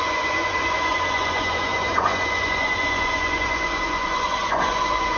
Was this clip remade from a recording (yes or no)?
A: yes